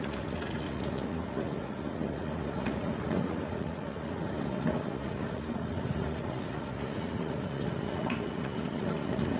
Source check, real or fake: fake